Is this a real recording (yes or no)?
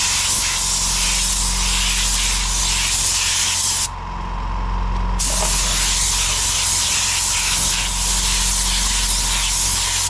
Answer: yes